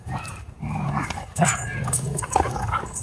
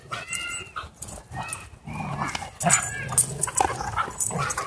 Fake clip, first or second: first